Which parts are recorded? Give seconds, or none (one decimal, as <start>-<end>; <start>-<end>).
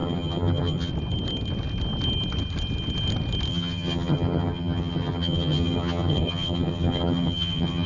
0.9-3.5